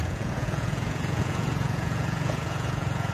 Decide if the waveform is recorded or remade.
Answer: remade